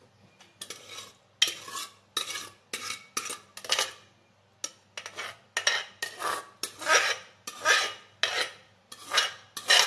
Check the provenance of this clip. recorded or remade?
recorded